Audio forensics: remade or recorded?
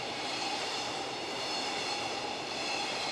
remade